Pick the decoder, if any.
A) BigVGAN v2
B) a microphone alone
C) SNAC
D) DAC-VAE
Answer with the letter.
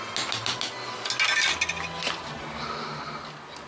B